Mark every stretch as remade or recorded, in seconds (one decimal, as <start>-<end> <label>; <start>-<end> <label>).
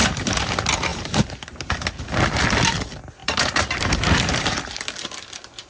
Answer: 0.0-0.5 remade; 0.5-0.9 recorded; 0.9-1.7 remade; 1.7-3.2 recorded; 3.2-4.8 remade; 4.8-5.7 recorded